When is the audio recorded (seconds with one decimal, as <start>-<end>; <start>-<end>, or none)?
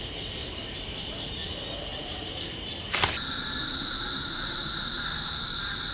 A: 0.0-0.4; 1.3-1.9; 5.4-5.9